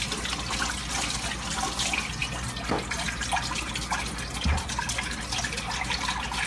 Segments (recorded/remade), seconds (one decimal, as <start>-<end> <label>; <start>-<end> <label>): 0.0-6.5 recorded